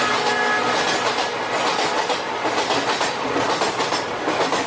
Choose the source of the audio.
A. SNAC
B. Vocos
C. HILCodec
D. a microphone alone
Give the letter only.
D